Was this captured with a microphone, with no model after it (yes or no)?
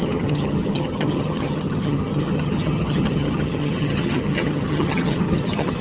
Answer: no